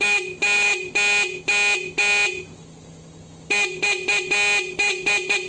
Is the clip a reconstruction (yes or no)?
no